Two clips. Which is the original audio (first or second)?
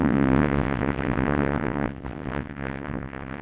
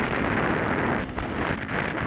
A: second